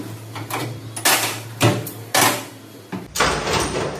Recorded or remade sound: recorded